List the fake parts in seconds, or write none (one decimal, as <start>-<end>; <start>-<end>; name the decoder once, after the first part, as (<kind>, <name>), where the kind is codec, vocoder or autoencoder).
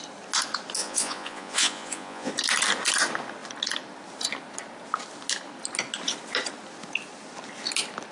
0.8-2.3 (vocoder, Vocos)